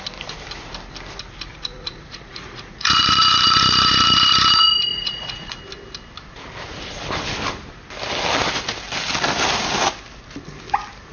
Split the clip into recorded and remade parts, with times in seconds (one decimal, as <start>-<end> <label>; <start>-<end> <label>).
0.0-1.5 recorded; 1.5-4.5 remade; 4.5-4.9 recorded; 4.9-5.6 remade; 5.6-11.1 recorded